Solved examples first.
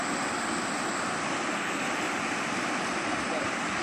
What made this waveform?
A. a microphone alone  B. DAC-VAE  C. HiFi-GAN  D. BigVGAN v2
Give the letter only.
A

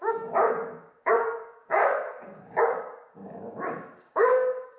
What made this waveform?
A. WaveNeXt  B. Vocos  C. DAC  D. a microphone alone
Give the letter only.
C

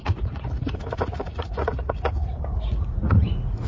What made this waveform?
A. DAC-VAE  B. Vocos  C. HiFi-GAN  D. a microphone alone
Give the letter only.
B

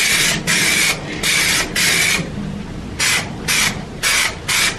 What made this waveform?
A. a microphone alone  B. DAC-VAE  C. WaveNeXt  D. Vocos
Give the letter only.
A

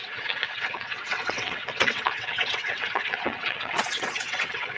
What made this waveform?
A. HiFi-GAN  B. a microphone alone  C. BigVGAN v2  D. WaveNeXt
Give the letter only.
D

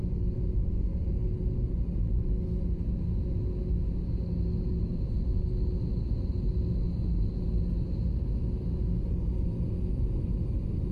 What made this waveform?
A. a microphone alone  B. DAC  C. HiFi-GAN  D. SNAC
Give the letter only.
A